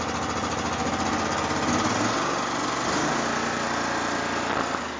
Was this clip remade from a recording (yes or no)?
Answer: no